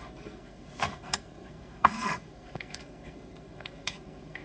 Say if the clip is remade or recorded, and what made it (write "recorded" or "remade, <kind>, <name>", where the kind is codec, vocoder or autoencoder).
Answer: remade, codec, SNAC